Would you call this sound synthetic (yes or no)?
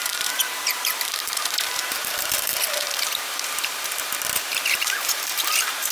yes